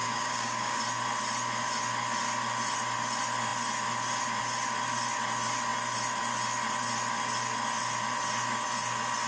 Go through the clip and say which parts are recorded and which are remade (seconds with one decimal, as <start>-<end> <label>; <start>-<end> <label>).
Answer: 0.0-0.8 remade; 0.8-9.3 recorded